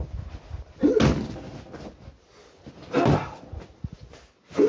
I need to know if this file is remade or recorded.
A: recorded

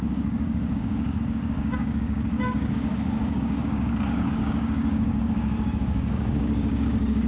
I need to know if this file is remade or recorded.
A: remade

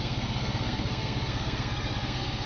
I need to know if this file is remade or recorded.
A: remade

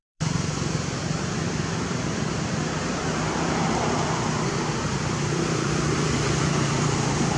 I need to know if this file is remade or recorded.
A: remade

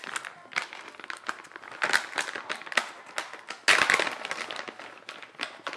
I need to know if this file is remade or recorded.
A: recorded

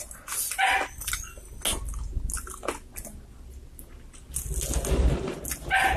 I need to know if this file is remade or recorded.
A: recorded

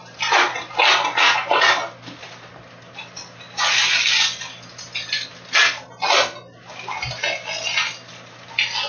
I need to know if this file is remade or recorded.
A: recorded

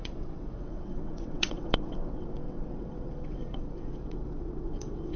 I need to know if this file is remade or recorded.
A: remade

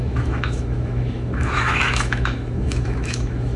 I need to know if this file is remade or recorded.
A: remade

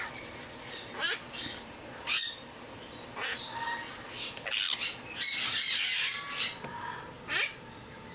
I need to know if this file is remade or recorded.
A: recorded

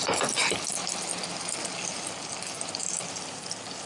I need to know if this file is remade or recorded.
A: recorded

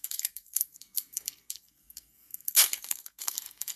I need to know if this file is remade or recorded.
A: remade